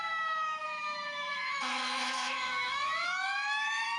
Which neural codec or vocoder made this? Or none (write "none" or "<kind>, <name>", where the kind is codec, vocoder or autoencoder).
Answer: autoencoder, DAC-VAE